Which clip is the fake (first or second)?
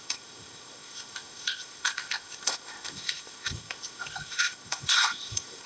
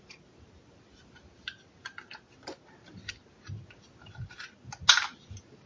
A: first